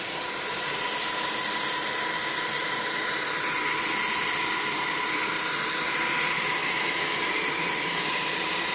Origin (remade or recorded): recorded